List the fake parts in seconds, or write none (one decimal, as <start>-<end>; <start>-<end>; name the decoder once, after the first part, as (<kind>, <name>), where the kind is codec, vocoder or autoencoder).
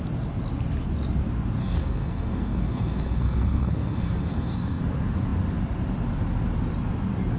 1.6-4.8 (codec, SNAC)